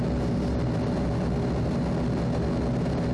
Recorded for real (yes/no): yes